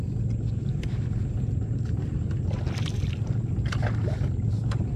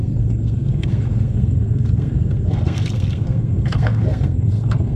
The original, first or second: first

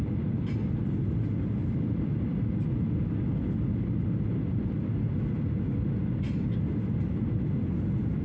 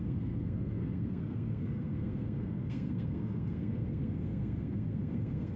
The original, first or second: first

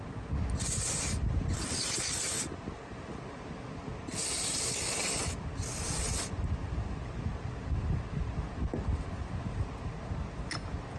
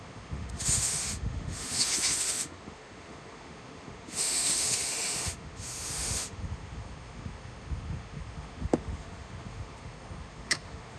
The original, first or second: first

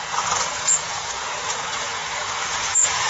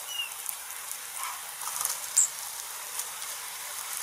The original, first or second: second